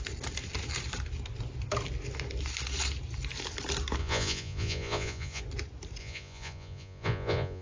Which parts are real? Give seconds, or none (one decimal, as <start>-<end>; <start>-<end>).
0.0-4.0; 5.4-6.0